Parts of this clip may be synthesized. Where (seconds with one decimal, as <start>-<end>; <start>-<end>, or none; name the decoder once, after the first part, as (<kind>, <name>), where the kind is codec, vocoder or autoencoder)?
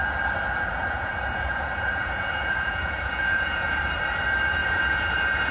0.7-3.8 (vocoder, Vocos); 4.6-5.5